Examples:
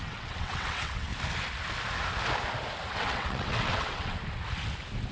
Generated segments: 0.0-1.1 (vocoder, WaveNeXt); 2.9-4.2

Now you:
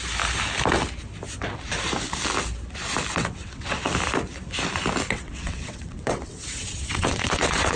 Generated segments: 3.1-3.9 (vocoder, WaveNeXt); 5.1-7.8